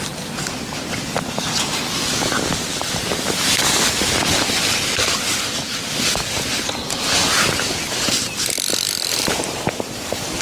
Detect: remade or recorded recorded